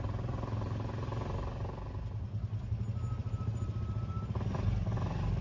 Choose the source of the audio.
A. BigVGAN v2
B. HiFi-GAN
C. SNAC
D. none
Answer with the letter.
D